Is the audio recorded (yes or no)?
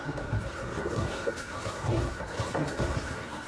no